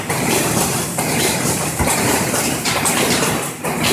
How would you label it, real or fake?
fake